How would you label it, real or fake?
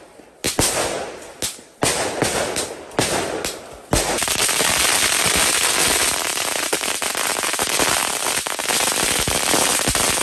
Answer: real